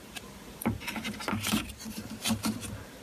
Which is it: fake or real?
fake